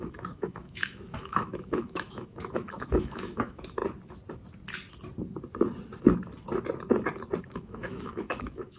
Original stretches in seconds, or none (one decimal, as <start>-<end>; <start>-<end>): 3.8-7.4